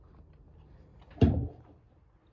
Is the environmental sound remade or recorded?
recorded